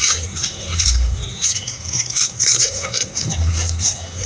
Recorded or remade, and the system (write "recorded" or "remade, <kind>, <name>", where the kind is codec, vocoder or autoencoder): remade, codec, SNAC